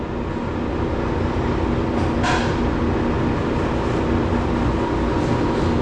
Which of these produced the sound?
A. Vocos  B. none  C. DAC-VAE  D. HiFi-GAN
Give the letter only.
B